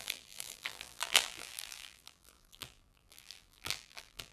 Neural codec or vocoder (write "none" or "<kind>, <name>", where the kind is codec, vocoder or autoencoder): vocoder, BigVGAN v2